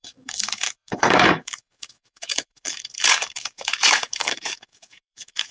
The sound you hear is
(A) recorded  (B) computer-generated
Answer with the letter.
B